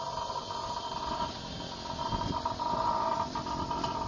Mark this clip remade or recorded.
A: recorded